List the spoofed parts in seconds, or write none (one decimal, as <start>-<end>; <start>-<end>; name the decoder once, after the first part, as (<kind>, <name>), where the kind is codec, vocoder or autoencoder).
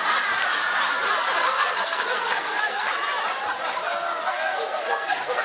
1.4-2.9 (codec, SNAC); 4.2-5.4